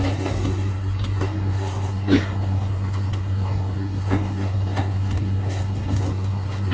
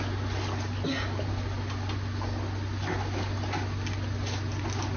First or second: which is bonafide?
second